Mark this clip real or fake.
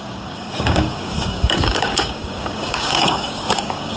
fake